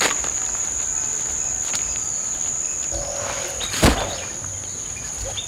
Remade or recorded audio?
recorded